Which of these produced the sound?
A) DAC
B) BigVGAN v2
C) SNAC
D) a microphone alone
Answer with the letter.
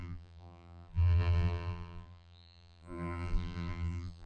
B